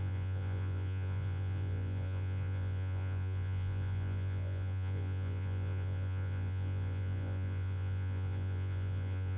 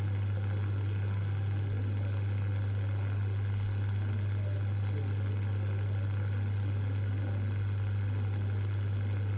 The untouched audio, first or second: second